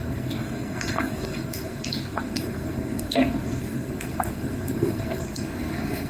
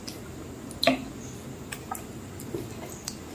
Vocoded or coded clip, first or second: first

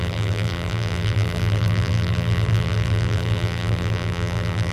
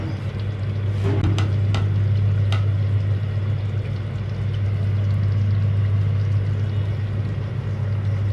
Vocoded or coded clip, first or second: first